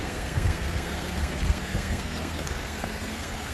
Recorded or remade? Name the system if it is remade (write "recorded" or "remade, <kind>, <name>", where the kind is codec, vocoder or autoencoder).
remade, codec, SNAC